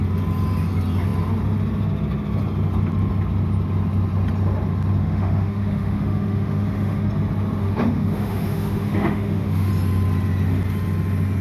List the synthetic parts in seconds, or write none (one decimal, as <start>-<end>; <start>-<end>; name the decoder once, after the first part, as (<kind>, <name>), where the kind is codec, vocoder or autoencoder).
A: 5.0-7.1 (autoencoder, DAC-VAE); 7.6-9.7